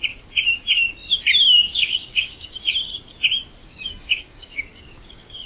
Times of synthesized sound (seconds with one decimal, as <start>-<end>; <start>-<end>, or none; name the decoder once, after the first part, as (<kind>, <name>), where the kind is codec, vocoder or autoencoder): 1.7-2.7 (codec, DAC); 3.6-5.5